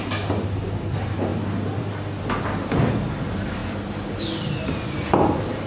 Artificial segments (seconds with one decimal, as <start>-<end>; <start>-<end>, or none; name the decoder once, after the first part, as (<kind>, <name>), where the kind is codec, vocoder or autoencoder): none